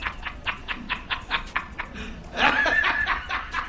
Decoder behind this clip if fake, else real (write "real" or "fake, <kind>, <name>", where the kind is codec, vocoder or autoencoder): fake, vocoder, Vocos